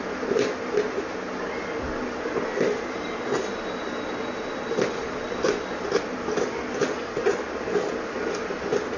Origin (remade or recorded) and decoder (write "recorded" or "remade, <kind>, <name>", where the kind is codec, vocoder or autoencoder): recorded